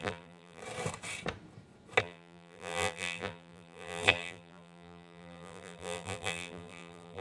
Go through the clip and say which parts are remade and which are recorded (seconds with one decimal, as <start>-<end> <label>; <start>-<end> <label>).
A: 0.0-0.6 remade; 0.6-2.0 recorded; 2.0-7.2 remade